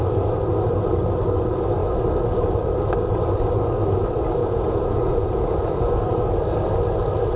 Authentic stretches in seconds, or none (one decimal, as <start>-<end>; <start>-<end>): 0.0-4.4; 6.0-7.4